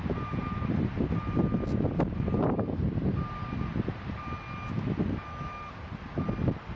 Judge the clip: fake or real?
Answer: real